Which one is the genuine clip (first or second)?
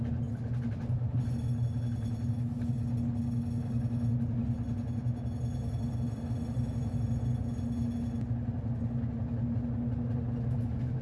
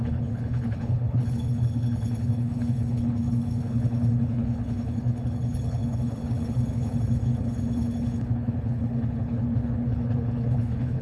first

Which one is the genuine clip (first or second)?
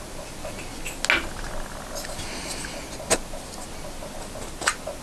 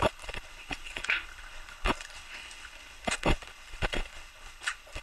first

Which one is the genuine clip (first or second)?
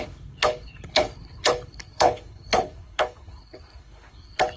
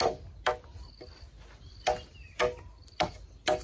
second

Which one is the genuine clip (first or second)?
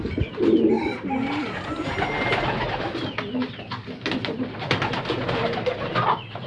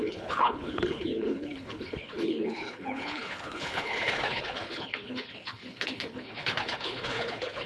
first